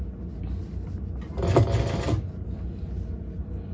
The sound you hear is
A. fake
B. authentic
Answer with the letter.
B